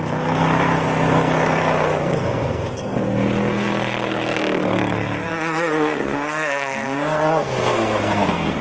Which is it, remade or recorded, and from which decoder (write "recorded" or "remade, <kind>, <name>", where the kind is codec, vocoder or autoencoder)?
remade, codec, SNAC